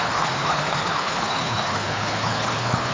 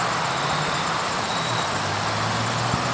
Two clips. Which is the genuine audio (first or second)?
second